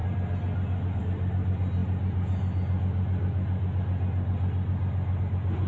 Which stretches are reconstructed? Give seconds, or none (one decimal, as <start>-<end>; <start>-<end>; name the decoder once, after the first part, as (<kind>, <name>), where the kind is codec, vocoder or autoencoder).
none